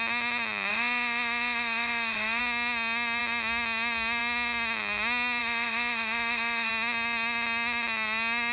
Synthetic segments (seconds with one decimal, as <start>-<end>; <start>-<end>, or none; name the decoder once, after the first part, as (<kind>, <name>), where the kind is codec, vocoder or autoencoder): 0.7-2.4 (autoencoder, DAC-VAE); 5.4-6.7